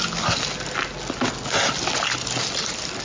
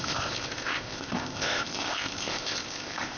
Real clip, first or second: first